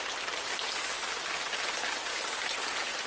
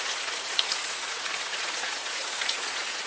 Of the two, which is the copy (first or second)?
second